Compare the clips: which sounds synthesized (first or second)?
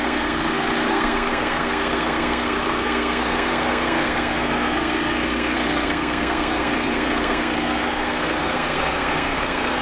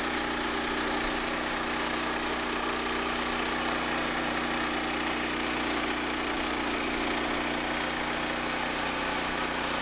first